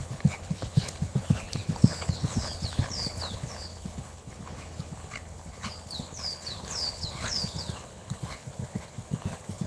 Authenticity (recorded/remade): remade